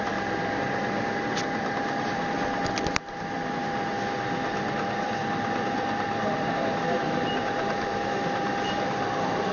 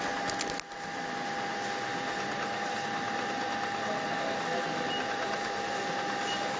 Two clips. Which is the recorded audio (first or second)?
second